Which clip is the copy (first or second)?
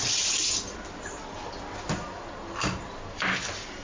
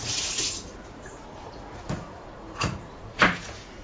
second